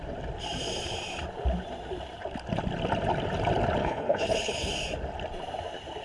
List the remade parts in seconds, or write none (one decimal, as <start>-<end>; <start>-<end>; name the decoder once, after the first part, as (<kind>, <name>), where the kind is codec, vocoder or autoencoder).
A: 3.8-4.7 (codec, HILCodec)

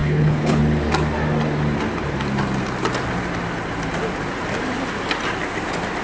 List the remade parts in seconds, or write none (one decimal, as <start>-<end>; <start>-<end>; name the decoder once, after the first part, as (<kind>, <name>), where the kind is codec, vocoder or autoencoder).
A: 0.0-0.6 (codec, HILCodec)

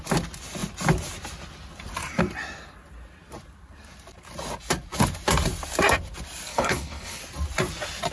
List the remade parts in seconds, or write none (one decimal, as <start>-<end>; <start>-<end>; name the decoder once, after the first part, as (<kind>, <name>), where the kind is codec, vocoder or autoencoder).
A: 6.5-7.2 (codec, HILCodec)

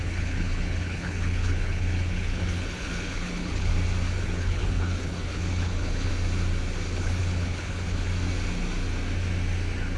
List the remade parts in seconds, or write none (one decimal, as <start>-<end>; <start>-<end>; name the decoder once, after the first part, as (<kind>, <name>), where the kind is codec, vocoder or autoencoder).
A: 0.0-3.7 (codec, HILCodec); 4.2-6.1; 6.9-8.1

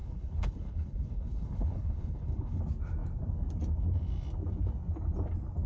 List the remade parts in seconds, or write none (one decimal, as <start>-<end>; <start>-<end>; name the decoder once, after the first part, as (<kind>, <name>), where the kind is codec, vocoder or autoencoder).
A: 0.0-2.6 (codec, HILCodec)